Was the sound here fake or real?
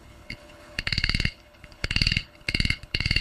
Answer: fake